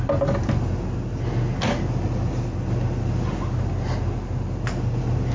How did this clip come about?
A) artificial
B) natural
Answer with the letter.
B